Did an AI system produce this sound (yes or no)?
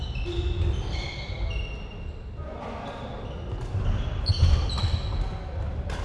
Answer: no